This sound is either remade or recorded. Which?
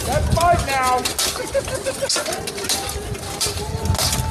recorded